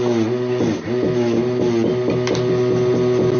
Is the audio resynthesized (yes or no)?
no